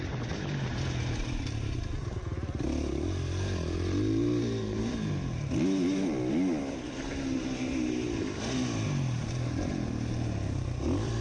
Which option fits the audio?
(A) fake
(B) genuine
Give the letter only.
B